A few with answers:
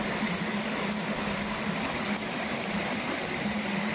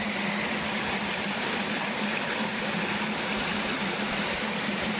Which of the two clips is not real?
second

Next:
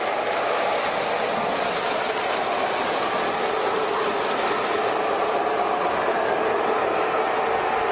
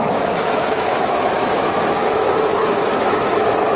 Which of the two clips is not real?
second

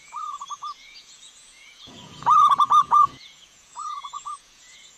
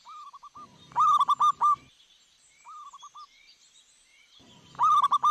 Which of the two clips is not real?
first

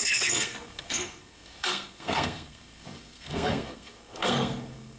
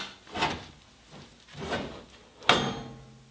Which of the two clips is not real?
first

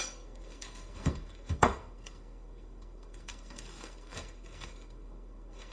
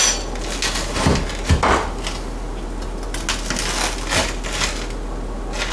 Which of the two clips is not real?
first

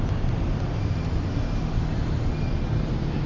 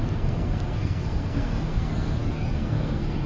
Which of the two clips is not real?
second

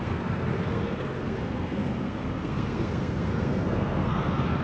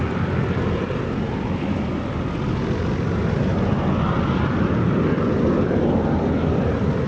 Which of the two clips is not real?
first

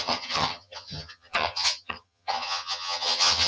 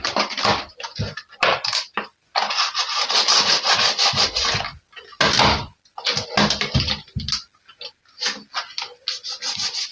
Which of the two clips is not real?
first